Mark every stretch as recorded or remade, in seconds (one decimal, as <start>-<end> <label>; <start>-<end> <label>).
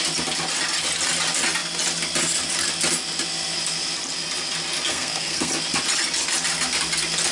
0.0-4.9 recorded; 4.9-5.5 remade; 5.5-7.3 recorded